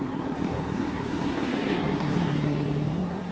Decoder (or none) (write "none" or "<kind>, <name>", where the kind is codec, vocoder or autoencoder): codec, SNAC